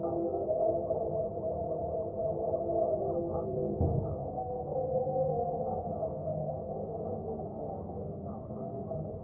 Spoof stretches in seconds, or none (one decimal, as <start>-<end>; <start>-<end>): 0.0-0.7; 3.2-9.2